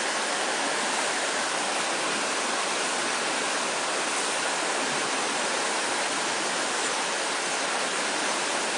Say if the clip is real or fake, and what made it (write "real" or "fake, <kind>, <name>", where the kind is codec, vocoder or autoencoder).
real